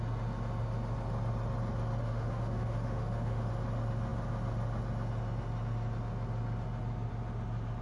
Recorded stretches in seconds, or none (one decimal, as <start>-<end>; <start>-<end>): 0.0-2.0; 3.5-7.8